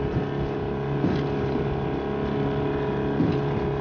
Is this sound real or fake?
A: real